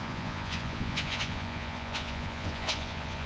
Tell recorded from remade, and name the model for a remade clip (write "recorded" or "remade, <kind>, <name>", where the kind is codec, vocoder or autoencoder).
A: remade, vocoder, Vocos